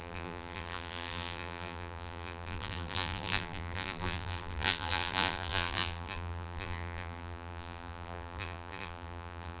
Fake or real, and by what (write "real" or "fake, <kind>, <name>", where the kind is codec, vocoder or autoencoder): fake, vocoder, BigVGAN v2